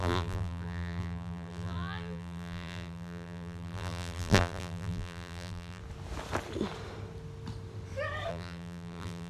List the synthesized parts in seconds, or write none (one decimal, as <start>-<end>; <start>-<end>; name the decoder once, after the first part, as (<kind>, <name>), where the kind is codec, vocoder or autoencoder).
0.0-5.8 (vocoder, BigVGAN v2); 8.3-9.3